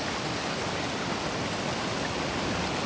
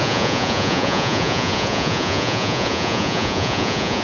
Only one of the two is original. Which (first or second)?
first